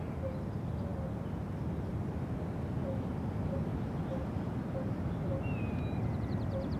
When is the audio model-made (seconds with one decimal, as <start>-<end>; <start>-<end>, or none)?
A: none